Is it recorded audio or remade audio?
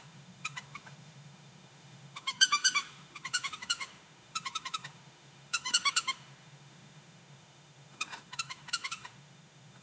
remade